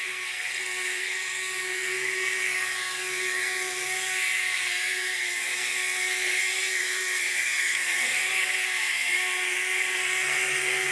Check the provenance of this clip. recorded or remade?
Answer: remade